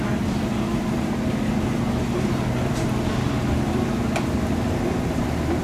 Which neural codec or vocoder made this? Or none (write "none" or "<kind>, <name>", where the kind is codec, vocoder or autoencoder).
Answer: none